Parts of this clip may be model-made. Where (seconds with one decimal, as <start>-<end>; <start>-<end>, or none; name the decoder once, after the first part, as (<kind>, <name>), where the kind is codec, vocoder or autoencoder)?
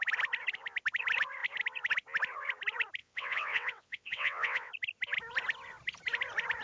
3.0-4.7 (vocoder, WaveNeXt)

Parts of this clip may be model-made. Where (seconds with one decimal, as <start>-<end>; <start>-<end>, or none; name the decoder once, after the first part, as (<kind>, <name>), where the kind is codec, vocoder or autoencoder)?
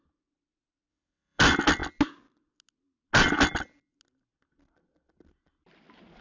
0.9-1.4 (vocoder, WaveNeXt)